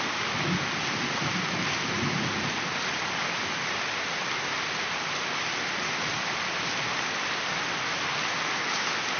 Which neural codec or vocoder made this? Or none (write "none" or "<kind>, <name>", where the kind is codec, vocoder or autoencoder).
none